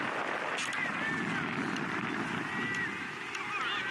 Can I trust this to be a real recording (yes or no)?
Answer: yes